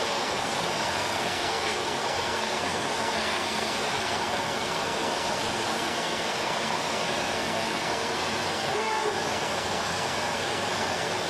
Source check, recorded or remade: remade